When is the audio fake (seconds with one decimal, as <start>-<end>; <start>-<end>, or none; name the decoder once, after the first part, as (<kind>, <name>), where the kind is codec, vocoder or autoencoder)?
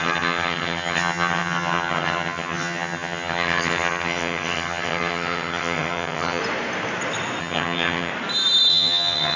0.0-6.4 (vocoder, HiFi-GAN); 7.4-8.1; 8.7-9.4